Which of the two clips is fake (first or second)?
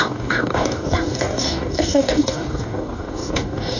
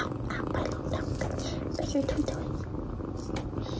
first